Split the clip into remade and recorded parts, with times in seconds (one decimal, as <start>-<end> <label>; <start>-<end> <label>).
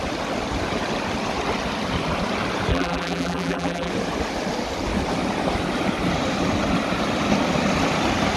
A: 0.0-2.7 recorded; 2.7-3.9 remade; 3.9-8.4 recorded